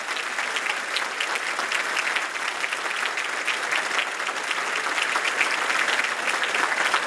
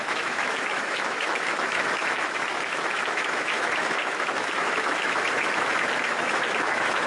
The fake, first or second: second